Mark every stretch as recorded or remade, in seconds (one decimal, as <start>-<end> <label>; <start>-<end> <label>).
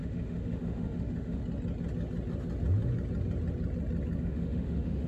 0.0-1.4 remade; 1.4-4.2 recorded; 4.2-5.1 remade